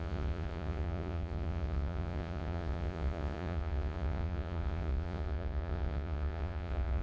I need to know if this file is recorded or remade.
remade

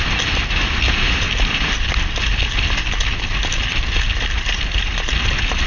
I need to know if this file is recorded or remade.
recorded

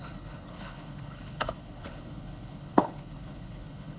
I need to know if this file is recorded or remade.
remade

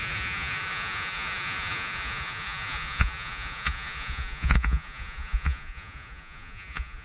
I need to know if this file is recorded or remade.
remade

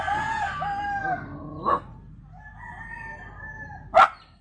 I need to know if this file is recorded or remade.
recorded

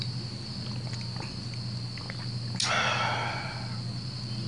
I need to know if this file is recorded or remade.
recorded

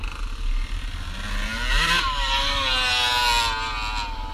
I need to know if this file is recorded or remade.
recorded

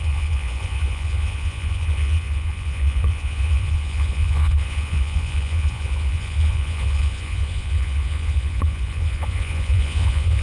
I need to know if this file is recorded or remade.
remade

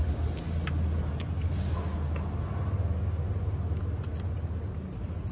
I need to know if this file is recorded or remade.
recorded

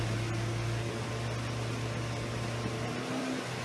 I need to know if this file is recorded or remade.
recorded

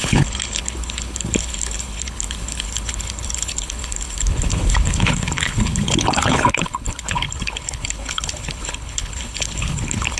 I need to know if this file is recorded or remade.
remade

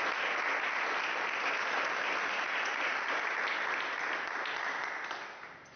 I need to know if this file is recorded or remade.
recorded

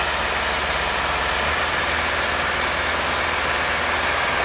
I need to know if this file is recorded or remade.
recorded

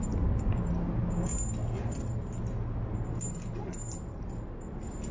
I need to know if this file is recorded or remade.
recorded